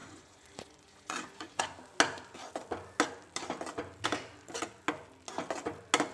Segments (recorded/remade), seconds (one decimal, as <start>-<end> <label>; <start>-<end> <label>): 0.0-1.6 remade; 1.6-6.1 recorded